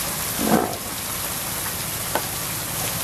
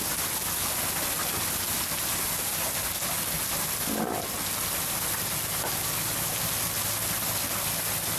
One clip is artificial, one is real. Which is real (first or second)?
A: second